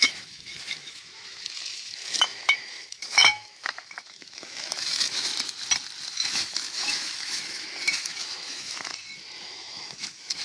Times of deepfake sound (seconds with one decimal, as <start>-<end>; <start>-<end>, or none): 0.0-5.3; 6.1-8.9; 9.4-10.4